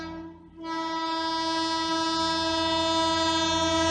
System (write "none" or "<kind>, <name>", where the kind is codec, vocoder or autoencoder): none